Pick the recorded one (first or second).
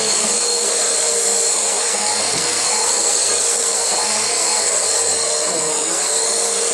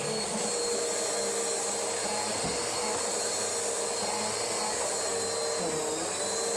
second